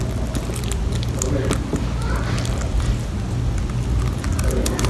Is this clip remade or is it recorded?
recorded